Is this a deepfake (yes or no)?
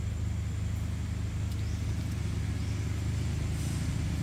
no